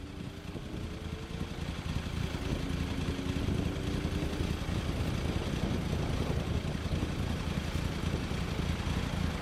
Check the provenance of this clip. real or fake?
real